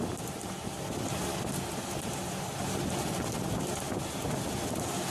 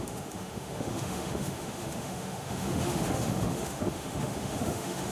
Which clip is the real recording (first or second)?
first